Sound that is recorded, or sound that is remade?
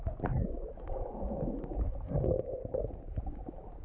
recorded